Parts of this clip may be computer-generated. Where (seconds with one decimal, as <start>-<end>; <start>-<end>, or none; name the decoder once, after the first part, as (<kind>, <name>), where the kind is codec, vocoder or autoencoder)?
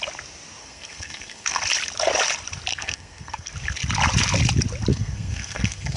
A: 0.6-1.6 (codec, SNAC); 2.7-3.5; 4.9-6.0